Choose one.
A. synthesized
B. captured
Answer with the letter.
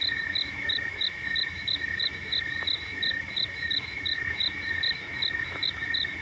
A